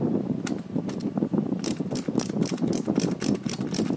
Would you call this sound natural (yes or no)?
yes